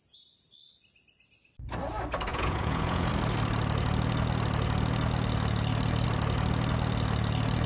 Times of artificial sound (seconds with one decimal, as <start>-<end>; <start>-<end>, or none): 2.3-3.1